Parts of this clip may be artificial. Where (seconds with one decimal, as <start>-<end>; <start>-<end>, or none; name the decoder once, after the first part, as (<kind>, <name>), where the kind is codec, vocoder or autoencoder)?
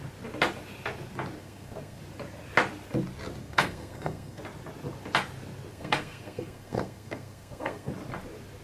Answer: 1.4-2.0 (codec, SNAC); 3.4-4.4; 5.7-7.9